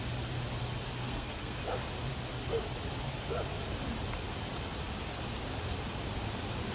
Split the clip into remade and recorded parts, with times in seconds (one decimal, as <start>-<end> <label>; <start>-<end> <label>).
0.0-1.0 recorded; 1.0-1.6 remade; 1.6-6.7 recorded